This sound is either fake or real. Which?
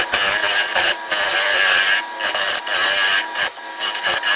real